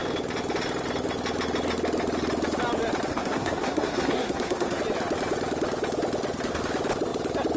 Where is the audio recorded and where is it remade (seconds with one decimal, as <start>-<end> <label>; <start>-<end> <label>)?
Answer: 0.0-3.1 recorded; 3.1-4.8 remade; 4.8-7.6 recorded